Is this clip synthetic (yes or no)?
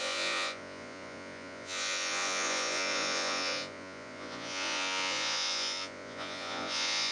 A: yes